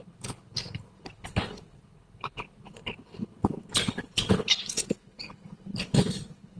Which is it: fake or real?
fake